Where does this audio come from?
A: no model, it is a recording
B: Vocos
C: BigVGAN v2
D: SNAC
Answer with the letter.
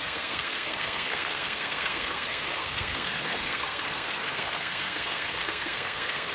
D